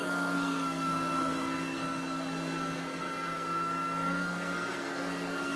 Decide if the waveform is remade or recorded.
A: remade